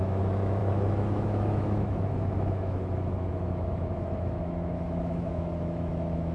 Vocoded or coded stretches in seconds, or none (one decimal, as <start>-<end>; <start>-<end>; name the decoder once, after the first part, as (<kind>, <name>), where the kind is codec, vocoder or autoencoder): 0.0-6.3 (autoencoder, DAC-VAE)

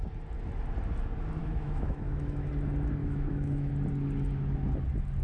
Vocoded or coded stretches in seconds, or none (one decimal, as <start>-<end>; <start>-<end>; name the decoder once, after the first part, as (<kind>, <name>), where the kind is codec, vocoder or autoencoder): 1.4-2.5 (autoencoder, DAC-VAE); 3.0-3.7

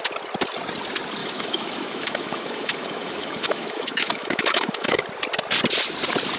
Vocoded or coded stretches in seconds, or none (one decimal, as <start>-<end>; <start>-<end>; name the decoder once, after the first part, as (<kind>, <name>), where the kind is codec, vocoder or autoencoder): 1.2-5.0 (autoencoder, DAC-VAE)

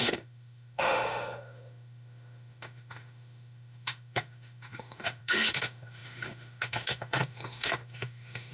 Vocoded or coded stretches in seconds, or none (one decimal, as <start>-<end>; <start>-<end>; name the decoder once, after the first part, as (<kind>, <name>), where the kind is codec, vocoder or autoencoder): 0.0-8.5 (autoencoder, DAC-VAE)

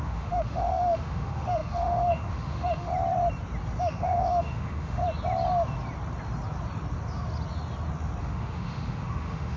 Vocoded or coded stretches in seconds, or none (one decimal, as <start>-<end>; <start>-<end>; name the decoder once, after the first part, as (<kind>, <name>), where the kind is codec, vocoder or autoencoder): 0.0-2.9 (autoencoder, DAC-VAE); 3.8-5.0; 8.2-9.6

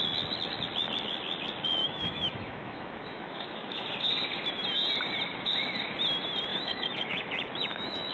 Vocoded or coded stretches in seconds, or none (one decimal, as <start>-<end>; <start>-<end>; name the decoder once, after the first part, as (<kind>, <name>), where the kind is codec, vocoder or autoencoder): 1.8-3.8 (autoencoder, DAC-VAE); 6.5-8.1

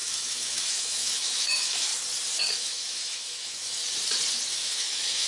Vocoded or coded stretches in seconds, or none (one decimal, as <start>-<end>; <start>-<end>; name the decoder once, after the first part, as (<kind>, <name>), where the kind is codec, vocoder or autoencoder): 0.0-1.9 (autoencoder, DAC-VAE); 2.5-3.8; 4.5-5.3